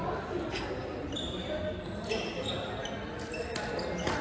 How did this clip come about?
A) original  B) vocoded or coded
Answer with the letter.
A